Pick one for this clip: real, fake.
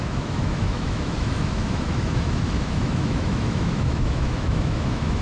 fake